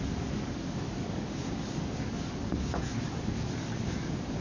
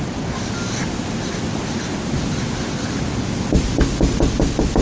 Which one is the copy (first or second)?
first